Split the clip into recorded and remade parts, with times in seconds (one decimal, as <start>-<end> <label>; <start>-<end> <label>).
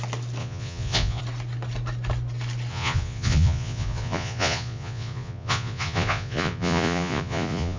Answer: 0.0-0.4 recorded; 0.4-1.2 remade; 1.2-2.7 recorded; 2.7-7.8 remade